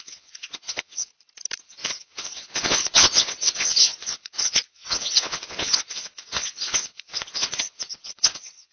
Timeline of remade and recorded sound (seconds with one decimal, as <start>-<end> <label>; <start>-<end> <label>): 0.0-1.1 remade; 1.1-1.6 recorded; 1.6-8.7 remade